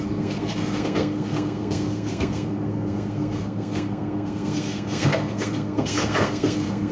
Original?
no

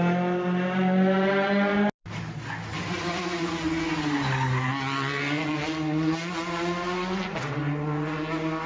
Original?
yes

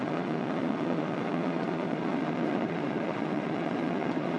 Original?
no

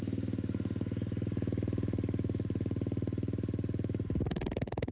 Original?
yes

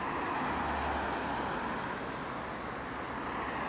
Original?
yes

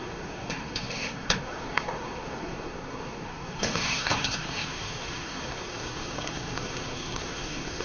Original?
no